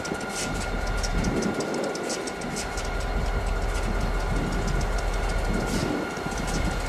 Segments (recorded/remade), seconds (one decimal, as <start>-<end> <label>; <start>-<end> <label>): 0.0-1.1 recorded; 1.1-2.8 remade; 2.8-6.9 recorded